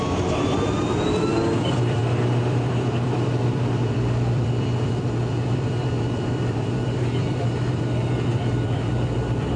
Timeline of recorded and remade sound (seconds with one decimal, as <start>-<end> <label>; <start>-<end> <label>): 0.0-9.6 remade